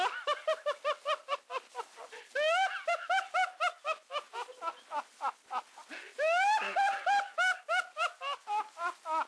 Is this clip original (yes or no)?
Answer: yes